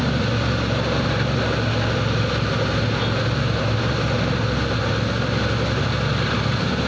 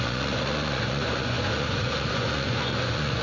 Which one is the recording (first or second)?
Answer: first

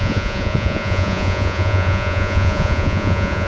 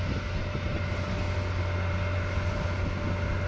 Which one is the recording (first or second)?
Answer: second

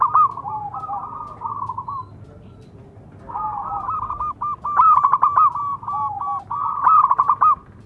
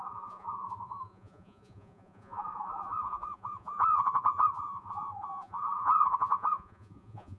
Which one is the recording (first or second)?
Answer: first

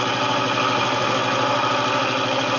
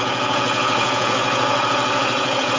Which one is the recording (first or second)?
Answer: first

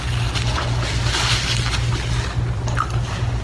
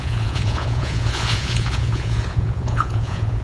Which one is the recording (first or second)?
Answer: first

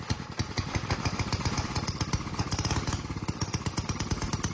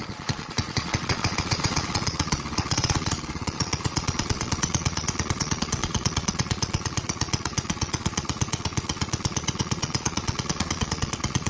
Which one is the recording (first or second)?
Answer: first